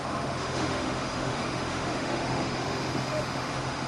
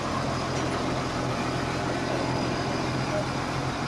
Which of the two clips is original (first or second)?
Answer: second